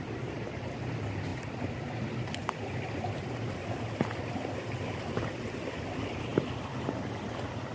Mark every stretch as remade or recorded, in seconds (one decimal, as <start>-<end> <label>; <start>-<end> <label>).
0.0-7.7 recorded